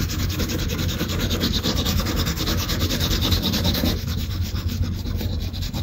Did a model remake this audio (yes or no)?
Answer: yes